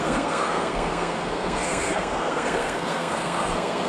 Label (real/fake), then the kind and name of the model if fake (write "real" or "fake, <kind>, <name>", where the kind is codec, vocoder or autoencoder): fake, codec, SNAC